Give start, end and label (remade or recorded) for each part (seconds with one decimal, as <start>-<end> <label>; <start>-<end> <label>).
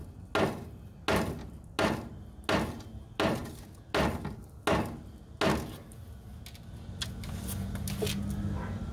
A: 0.0-8.9 recorded